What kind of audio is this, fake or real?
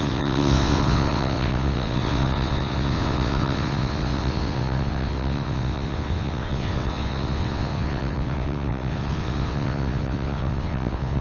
fake